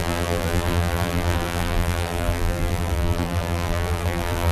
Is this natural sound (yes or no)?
no